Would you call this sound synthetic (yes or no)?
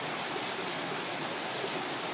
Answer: no